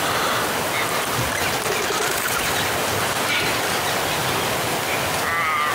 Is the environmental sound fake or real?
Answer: real